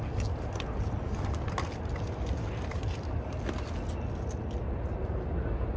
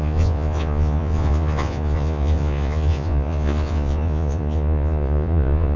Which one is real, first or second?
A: first